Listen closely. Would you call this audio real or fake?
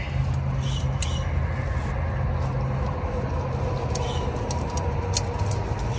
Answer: real